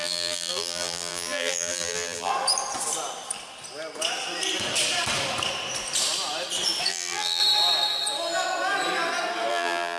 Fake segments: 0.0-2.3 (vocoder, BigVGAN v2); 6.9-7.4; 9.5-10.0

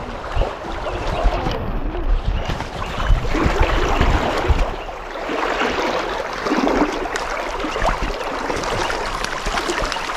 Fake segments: 1.0-1.8 (vocoder, BigVGAN v2); 4.2-10.2

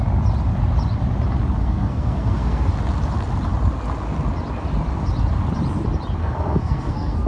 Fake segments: 1.6-2.7 (codec, SNAC); 6.2-7.3

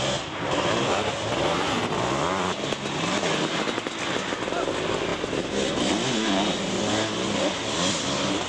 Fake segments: none

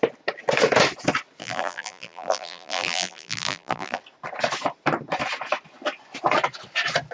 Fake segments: 1.4-4.0 (vocoder, BigVGAN v2)

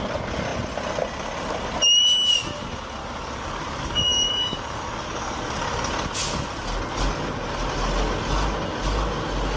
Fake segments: 3.0-5.9 (codec, DAC)